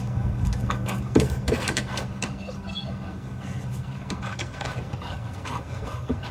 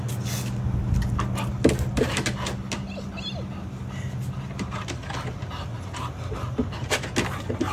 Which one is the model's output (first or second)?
first